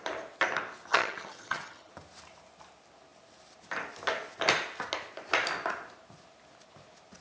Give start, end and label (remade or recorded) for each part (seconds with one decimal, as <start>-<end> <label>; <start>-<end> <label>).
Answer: 0.0-0.9 recorded; 0.9-1.9 remade; 1.9-7.2 recorded